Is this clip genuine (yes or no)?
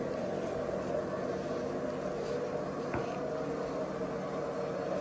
yes